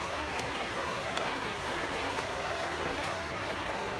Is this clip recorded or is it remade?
remade